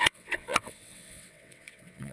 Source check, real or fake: fake